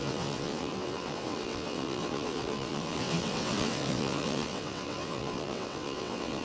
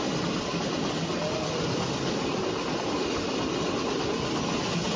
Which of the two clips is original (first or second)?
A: second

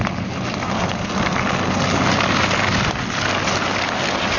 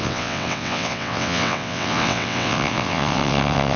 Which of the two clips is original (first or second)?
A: first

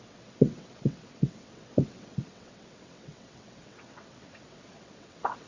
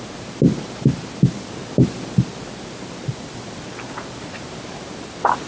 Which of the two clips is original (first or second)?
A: second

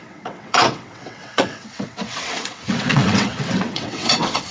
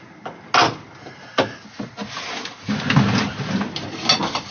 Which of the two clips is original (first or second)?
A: second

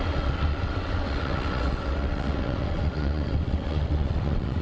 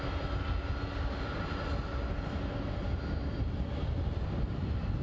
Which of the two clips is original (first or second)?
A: second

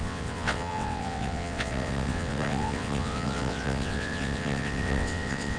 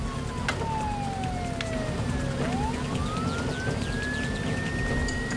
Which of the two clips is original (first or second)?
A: second